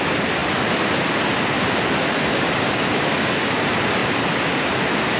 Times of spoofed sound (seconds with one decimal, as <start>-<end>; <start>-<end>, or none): 2.3-3.6